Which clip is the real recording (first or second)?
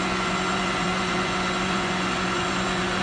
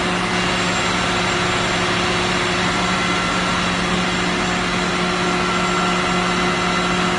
second